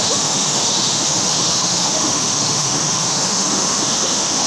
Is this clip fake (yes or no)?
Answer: yes